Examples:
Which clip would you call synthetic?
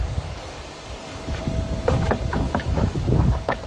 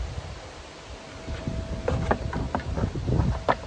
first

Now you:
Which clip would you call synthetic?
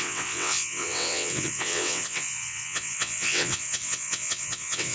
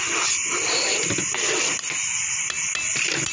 first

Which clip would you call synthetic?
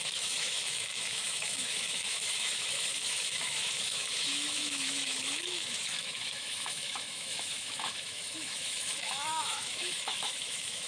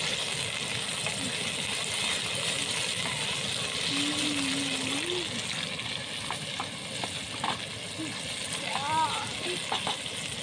first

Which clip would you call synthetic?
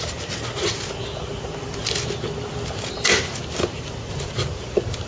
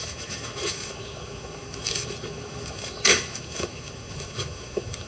second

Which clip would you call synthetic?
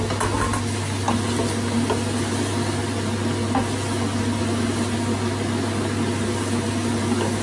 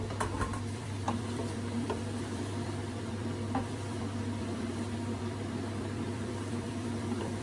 second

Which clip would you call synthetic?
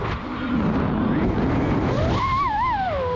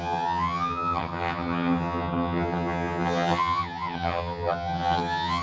second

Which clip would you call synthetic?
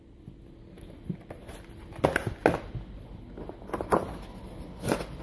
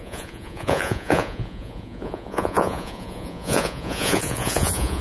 second